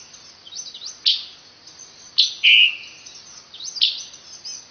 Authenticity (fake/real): real